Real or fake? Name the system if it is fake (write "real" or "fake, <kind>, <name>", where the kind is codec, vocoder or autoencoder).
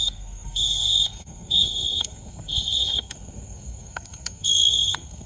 fake, codec, SNAC